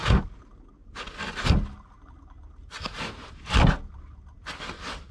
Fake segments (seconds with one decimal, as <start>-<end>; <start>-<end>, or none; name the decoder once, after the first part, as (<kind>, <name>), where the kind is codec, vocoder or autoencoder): none